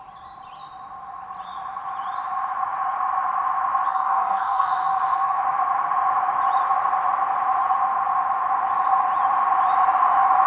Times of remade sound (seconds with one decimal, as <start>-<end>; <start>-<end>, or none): 3.9-5.4